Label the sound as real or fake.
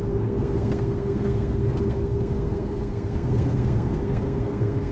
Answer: fake